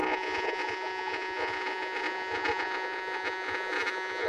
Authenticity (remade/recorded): remade